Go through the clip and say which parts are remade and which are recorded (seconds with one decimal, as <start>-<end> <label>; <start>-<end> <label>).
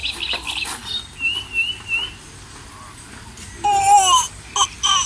0.0-5.1 recorded